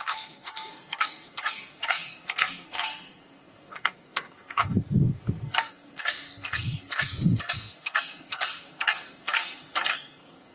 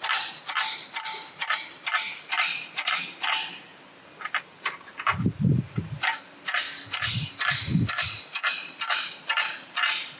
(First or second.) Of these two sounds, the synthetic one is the first